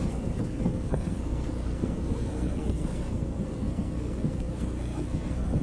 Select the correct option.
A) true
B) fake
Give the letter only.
B